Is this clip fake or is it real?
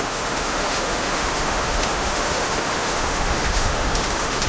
fake